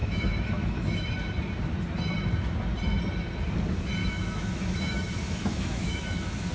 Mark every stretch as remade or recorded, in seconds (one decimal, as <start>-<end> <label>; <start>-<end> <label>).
0.0-1.1 remade; 1.1-4.0 recorded; 4.0-6.5 remade